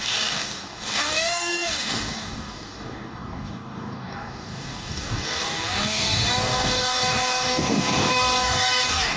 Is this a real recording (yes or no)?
no